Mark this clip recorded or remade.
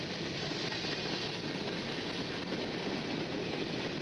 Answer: recorded